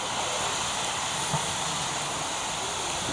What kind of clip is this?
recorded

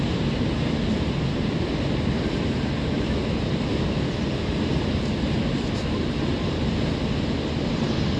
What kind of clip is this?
recorded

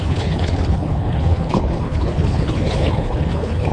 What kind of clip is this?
remade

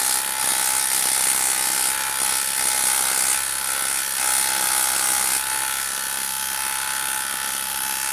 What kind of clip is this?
recorded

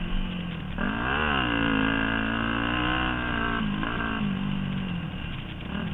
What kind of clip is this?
recorded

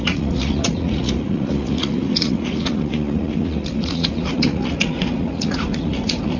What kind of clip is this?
remade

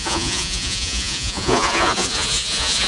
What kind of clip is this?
remade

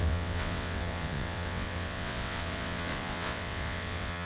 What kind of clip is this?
remade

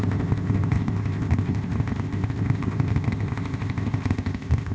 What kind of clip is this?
remade